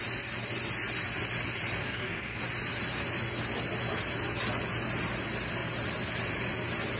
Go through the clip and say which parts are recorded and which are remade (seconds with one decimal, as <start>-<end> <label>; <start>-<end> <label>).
0.0-1.8 recorded; 1.8-2.4 remade; 2.4-7.0 recorded